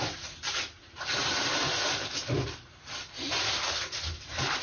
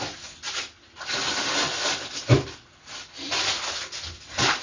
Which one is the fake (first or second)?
first